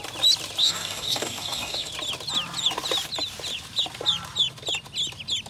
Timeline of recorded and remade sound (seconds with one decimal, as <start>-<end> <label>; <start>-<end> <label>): 0.0-0.6 recorded; 0.6-1.9 remade; 1.9-5.5 recorded